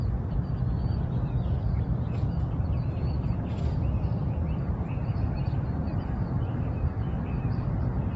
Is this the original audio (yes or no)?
no